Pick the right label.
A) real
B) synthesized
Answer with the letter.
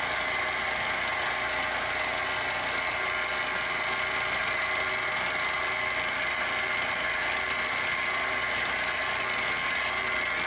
A